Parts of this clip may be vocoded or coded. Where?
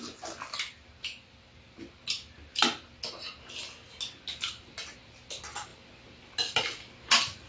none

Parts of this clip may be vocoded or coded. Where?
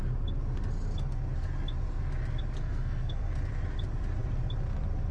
2.6-3.3 (codec, SNAC)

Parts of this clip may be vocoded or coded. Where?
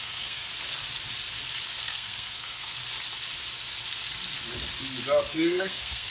0.0-0.5 (codec, SNAC); 1.8-2.8; 5.3-6.1